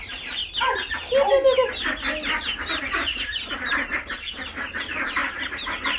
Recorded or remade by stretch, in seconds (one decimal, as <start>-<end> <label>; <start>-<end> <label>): 0.0-0.4 remade; 0.4-2.8 recorded; 2.8-6.0 remade